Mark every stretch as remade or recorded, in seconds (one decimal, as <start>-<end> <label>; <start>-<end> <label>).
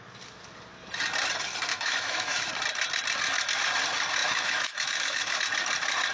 0.0-1.7 recorded; 1.7-2.5 remade; 2.5-4.2 recorded; 4.2-5.4 remade; 5.4-6.1 recorded